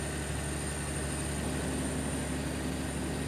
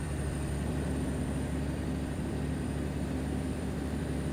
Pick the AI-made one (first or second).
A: second